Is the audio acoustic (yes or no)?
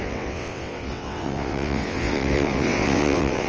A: no